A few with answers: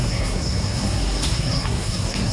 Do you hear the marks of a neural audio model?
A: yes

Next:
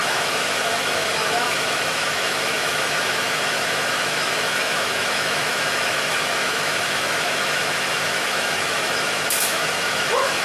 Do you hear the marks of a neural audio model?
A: yes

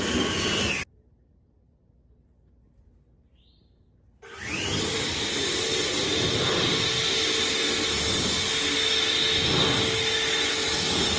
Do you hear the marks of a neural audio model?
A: no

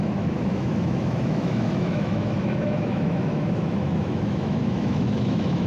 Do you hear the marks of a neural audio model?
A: yes